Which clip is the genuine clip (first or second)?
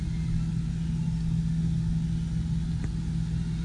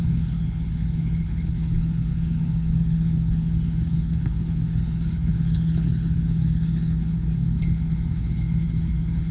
first